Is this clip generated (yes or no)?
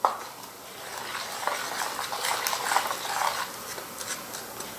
no